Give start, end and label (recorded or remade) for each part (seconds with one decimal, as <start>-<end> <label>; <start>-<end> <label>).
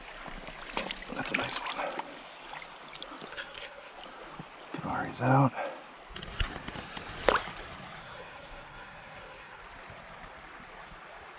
0.0-3.3 recorded; 3.3-3.9 remade; 3.9-8.0 recorded; 8.0-9.6 remade; 9.6-11.4 recorded